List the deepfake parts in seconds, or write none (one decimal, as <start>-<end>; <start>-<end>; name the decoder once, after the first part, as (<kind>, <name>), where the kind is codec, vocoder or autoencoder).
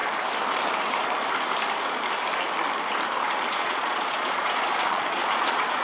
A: 3.5-5.8 (vocoder, Vocos)